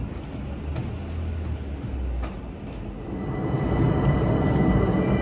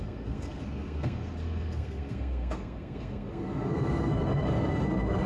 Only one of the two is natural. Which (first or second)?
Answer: first